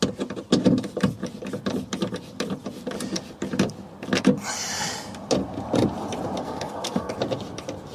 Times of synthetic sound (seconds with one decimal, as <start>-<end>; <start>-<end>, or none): 6.4-7.1